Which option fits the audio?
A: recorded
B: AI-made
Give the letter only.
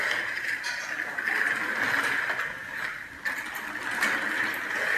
A